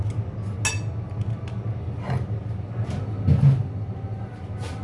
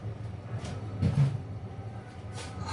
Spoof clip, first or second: second